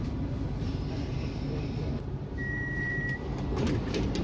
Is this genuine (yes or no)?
no